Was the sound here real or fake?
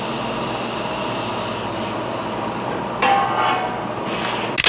real